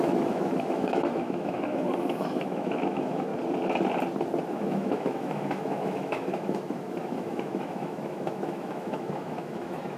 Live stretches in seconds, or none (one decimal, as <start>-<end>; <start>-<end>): 3.3-4.5